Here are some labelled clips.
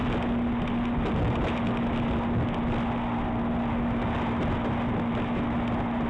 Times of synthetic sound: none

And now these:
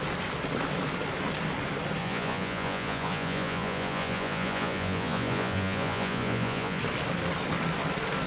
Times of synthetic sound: 2.0-6.8 (vocoder, Vocos)

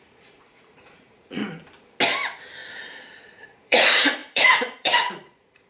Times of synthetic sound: 0.0-1.4 (vocoder, Vocos); 2.7-5.7

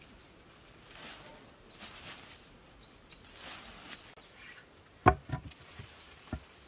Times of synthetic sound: none

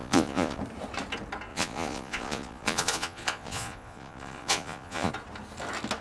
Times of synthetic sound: 0.0-0.6 (vocoder, Vocos); 1.5-5.1

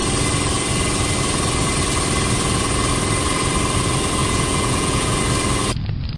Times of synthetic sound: 4.2-5.2 (vocoder, Vocos)

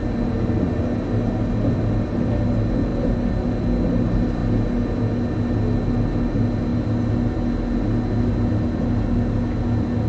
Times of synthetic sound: none